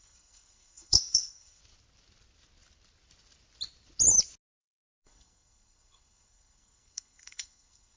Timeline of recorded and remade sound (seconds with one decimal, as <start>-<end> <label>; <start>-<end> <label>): 0.0-1.6 remade; 1.6-4.6 recorded; 4.6-8.0 remade